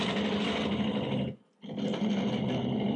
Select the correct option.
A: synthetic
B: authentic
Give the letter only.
B